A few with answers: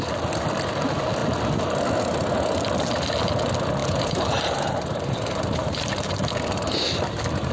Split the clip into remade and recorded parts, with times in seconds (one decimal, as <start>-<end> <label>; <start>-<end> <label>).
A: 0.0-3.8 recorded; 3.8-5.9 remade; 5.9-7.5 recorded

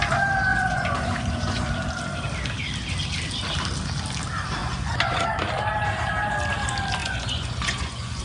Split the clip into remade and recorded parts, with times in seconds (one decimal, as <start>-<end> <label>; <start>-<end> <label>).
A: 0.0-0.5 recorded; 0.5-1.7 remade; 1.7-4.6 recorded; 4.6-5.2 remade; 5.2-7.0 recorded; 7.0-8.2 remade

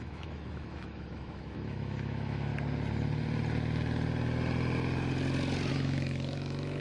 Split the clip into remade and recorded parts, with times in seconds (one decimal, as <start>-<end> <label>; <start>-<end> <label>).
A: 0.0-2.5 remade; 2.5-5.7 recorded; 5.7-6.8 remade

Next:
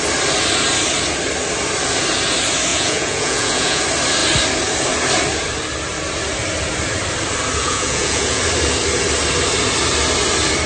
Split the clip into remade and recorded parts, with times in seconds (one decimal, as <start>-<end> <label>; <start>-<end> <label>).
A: 0.0-2.7 recorded; 2.7-3.8 remade; 3.8-7.6 recorded; 7.6-8.4 remade; 8.4-10.7 recorded

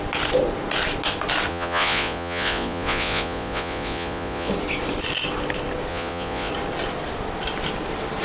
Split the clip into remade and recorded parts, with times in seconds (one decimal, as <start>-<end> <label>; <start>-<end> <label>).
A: 0.0-1.5 recorded; 1.5-4.5 remade; 4.5-5.9 recorded; 5.9-6.5 remade; 6.5-8.2 recorded

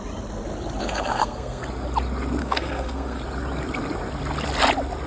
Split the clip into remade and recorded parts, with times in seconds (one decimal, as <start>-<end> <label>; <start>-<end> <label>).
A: 0.0-0.8 recorded; 0.8-1.6 remade; 1.6-2.4 recorded; 2.4-3.2 remade; 3.2-5.1 recorded

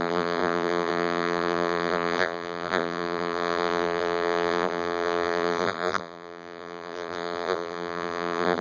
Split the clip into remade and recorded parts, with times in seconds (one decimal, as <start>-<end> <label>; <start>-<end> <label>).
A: 0.0-8.6 remade